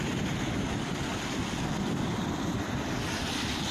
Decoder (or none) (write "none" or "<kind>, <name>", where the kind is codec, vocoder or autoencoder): none